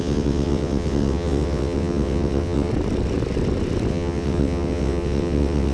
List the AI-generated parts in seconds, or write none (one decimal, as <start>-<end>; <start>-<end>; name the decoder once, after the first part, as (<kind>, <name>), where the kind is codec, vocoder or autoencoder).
0.0-2.7 (vocoder, WaveNeXt); 3.9-5.7